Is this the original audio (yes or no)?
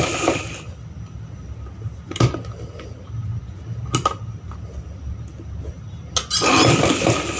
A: yes